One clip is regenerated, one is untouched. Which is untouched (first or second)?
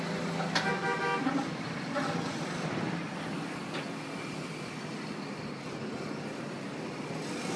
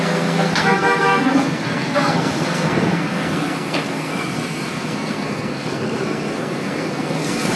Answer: first